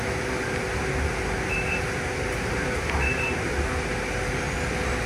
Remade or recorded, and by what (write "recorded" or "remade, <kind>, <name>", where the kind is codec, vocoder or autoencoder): recorded